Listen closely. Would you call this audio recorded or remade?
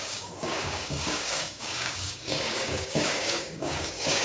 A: remade